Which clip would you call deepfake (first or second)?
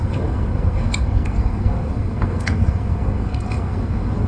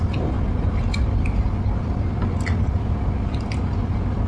first